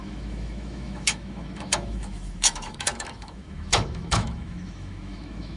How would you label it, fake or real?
fake